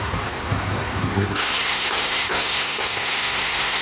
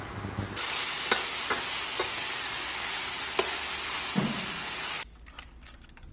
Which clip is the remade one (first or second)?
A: first